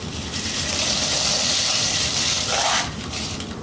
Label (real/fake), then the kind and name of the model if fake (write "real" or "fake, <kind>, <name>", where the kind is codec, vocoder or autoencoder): fake, vocoder, BigVGAN v2